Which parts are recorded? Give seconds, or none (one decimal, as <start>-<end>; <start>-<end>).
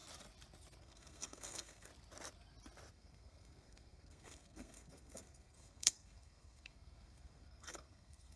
0.0-0.8; 1.9-2.9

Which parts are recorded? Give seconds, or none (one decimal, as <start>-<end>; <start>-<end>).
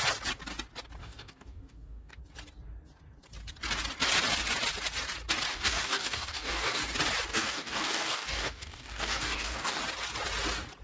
0.0-1.0; 2.2-5.5; 6.8-7.3; 9.8-10.8